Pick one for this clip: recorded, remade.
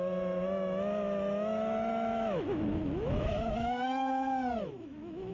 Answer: remade